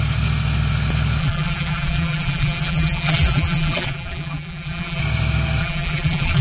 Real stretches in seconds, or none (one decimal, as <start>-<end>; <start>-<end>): 0.0-1.2; 5.0-5.6